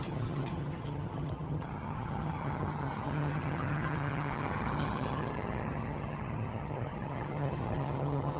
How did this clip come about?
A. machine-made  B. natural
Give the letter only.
A